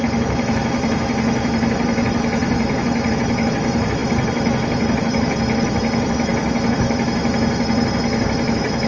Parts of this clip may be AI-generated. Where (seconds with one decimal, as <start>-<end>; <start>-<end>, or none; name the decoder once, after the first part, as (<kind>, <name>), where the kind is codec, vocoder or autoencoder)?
0.0-8.9 (autoencoder, DAC-VAE)